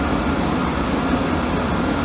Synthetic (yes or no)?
no